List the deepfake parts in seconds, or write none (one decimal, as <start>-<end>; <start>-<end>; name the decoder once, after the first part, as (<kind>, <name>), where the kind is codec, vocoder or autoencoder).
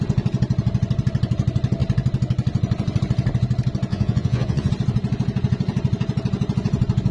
3.9-4.7 (vocoder, Vocos)